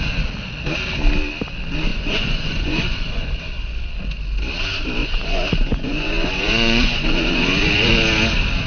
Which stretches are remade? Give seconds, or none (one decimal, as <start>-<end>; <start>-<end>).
1.9-3.3; 5.0-7.9